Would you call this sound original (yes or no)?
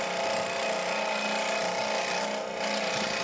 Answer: yes